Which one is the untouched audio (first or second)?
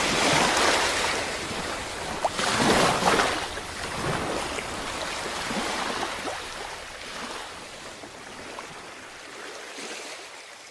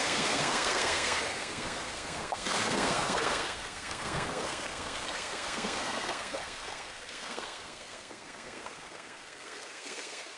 first